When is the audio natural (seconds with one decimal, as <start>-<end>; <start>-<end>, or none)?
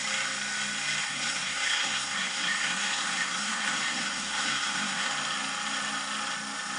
0.0-1.0; 5.1-6.8